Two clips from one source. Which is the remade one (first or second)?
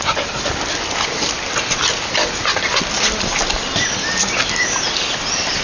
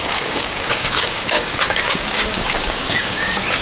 second